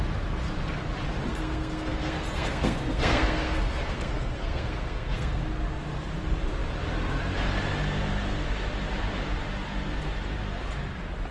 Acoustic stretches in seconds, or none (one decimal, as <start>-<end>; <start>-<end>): 0.0-1.3; 5.4-11.3